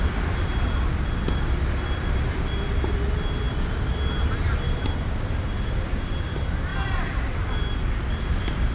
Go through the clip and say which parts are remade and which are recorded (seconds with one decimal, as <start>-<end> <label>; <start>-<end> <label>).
0.0-0.5 remade; 0.5-5.4 recorded; 5.4-8.7 remade

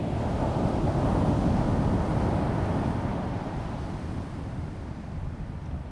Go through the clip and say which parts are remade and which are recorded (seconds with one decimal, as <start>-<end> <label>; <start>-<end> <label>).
0.0-5.9 recorded